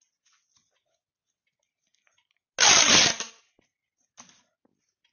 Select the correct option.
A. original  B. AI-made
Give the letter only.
A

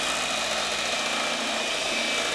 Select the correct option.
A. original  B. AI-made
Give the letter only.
A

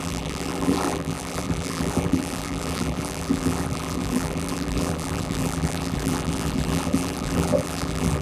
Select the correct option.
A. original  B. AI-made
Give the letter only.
B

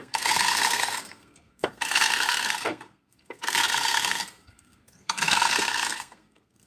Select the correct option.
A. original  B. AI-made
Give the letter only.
B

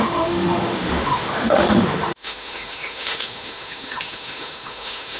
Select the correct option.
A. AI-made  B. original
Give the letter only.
A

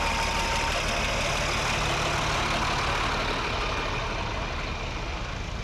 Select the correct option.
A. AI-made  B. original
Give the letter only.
B